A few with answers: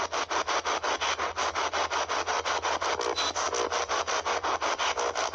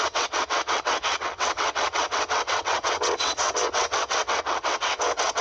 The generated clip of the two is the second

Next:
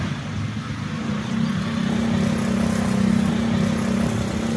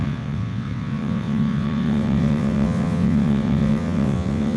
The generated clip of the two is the second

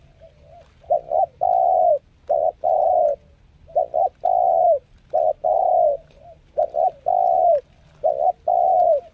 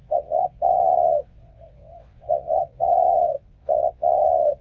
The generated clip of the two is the second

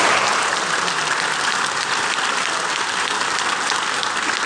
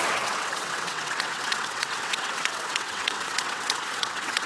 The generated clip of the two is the second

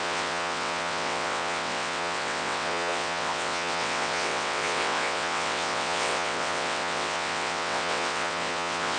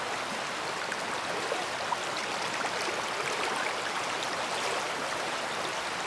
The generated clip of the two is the first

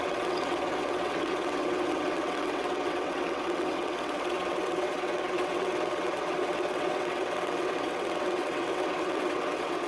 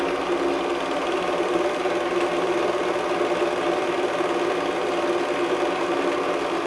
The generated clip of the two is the first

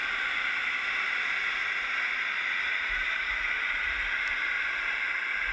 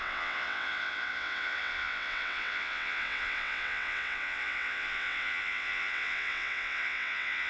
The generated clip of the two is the second